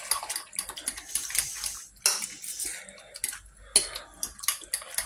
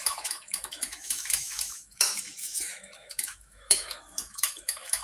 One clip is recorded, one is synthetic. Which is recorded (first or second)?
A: first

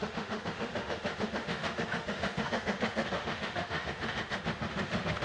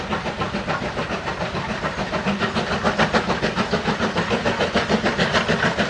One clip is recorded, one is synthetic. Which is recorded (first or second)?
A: second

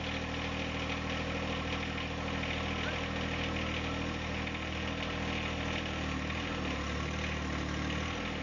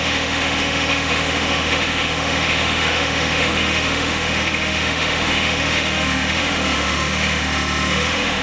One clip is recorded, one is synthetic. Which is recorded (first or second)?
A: first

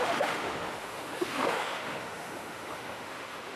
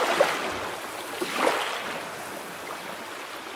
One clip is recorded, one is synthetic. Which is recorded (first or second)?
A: second